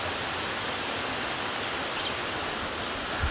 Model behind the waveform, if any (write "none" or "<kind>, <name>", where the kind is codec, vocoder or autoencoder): none